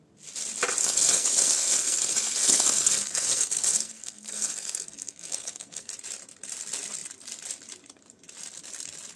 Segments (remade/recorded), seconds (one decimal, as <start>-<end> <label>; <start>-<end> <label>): 0.0-0.8 recorded; 0.8-5.9 remade; 5.9-9.2 recorded